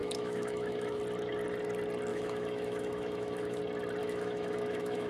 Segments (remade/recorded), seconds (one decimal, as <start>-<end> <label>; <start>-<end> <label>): 0.0-1.0 remade; 1.0-2.1 recorded; 2.1-3.6 remade; 3.6-4.0 recorded; 4.0-5.1 remade